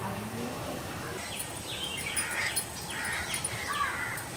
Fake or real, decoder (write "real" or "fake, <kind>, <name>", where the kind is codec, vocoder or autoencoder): real